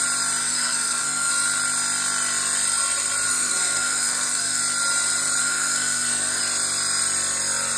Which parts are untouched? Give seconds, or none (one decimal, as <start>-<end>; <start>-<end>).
0.0-0.4; 1.3-3.3; 4.6-5.4; 6.4-7.8